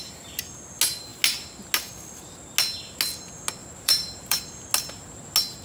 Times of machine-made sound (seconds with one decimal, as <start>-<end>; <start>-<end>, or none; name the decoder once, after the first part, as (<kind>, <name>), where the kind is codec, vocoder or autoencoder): 3.6-4.4 (vocoder, BigVGAN v2)